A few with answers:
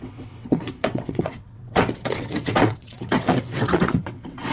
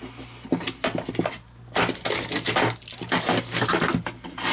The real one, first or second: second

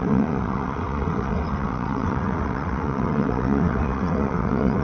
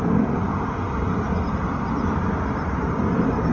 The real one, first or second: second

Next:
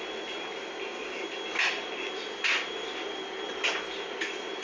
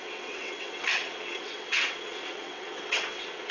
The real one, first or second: first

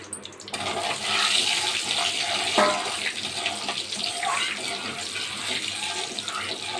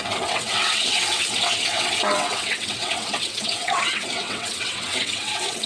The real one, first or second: first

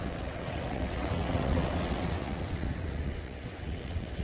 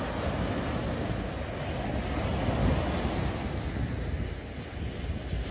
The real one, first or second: second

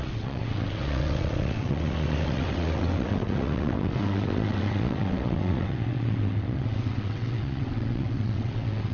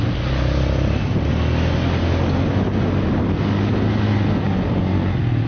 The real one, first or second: second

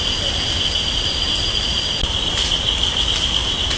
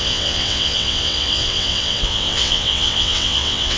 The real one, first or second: first